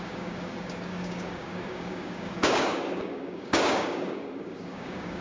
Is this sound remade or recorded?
remade